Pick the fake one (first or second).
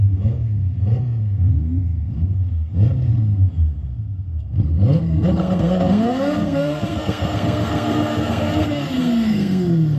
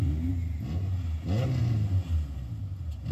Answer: first